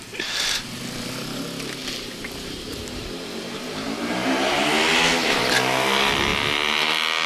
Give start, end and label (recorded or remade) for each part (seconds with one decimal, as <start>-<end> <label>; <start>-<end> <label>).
0.0-1.8 recorded; 1.8-4.6 remade; 4.6-7.3 recorded